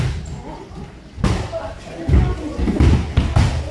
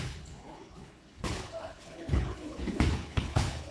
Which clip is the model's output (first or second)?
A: second